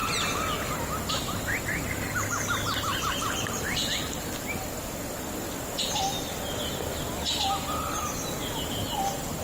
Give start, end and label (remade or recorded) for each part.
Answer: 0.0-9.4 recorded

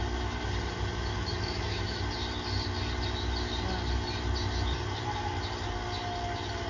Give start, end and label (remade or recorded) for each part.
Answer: 0.0-1.1 recorded; 1.1-2.0 remade; 2.0-6.7 recorded

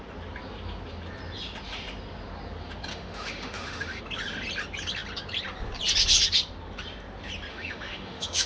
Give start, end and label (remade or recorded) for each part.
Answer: 0.0-2.9 recorded; 2.9-4.0 remade; 4.0-7.5 recorded; 7.5-8.5 remade

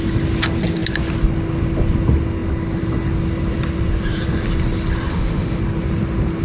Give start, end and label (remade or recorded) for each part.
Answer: 0.0-5.1 recorded; 5.1-5.6 remade; 5.6-6.4 recorded

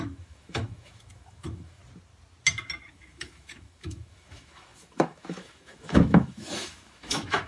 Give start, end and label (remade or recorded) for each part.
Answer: 0.0-1.8 remade; 1.8-2.9 recorded; 2.9-7.5 remade

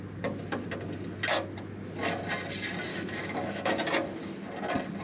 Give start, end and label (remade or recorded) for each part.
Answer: 0.0-2.9 recorded; 2.9-3.7 remade; 3.7-5.0 recorded